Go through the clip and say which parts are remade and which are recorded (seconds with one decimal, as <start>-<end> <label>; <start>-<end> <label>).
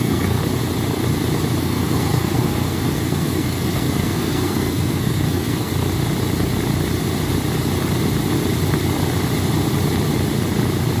0.0-0.4 remade; 0.4-1.6 recorded; 1.6-5.7 remade; 5.7-11.0 recorded